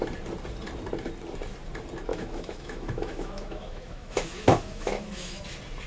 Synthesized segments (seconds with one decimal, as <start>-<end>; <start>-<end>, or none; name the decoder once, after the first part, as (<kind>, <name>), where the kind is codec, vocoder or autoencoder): 2.1-5.4 (autoencoder, DAC-VAE)